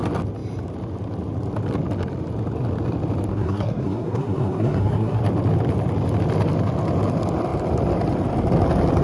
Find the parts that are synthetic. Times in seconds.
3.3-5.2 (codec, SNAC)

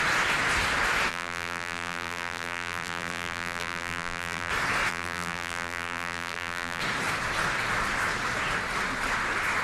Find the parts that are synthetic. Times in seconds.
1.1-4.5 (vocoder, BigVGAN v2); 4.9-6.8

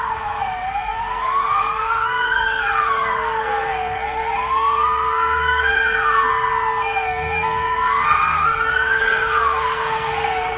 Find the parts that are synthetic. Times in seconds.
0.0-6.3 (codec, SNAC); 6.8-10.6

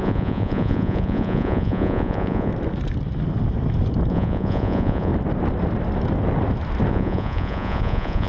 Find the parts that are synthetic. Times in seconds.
0.0-2.5 (vocoder, Vocos); 4.1-5.1; 6.9-8.3

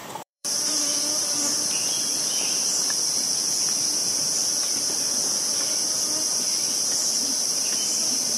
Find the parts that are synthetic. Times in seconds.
0.0-0.8 (vocoder, BigVGAN v2)

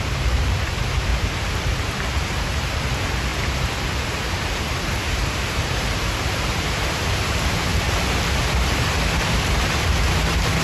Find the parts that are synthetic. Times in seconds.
0.0-1.1 (vocoder, BigVGAN v2); 1.8-7.7